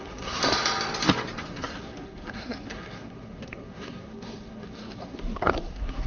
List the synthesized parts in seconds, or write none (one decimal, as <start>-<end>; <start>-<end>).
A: 0.0-0.4; 1.4-6.1